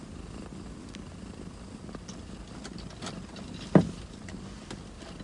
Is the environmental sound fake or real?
real